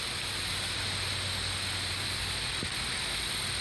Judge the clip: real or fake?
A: real